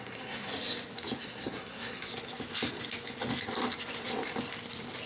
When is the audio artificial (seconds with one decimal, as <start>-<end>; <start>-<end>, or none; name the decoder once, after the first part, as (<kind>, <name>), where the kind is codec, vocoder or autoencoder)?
0.0-0.5 (codec, SNAC); 1.2-2.1